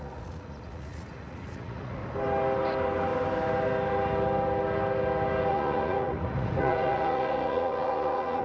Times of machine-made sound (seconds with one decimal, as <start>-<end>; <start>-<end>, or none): 0.0-2.0; 5.5-8.4